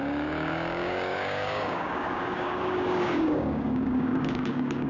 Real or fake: fake